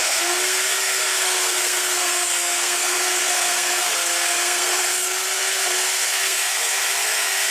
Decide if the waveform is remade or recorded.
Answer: remade